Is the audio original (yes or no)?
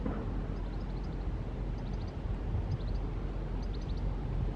yes